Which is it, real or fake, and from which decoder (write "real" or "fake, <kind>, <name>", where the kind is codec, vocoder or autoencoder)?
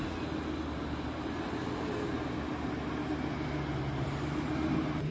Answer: real